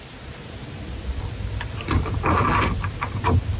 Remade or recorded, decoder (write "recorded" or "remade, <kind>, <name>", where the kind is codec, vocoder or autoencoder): recorded